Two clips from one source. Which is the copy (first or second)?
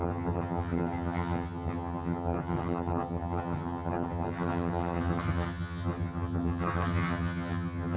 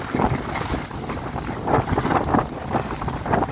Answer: first